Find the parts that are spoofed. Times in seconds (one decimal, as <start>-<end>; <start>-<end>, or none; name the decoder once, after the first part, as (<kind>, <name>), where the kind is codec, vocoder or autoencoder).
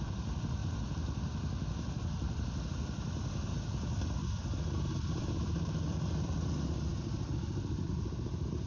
0.0-0.6 (vocoder, BigVGAN v2); 2.7-3.5; 5.0-8.7